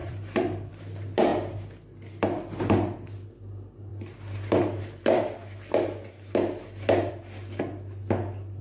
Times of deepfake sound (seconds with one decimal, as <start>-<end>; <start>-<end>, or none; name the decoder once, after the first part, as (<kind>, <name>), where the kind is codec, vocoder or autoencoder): 0.0-0.7 (vocoder, BigVGAN v2)